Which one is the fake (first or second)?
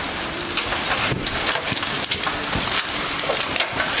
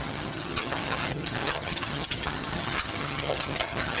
second